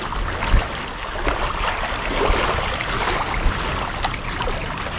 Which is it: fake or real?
real